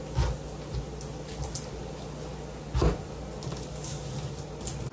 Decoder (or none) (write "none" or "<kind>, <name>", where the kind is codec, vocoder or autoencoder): none